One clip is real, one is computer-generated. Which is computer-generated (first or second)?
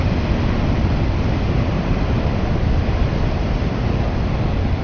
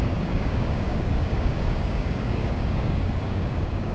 second